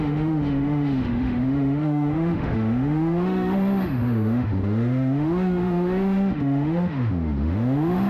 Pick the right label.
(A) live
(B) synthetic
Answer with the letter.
B